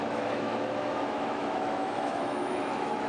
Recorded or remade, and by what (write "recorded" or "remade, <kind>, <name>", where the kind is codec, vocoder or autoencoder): remade, autoencoder, DAC-VAE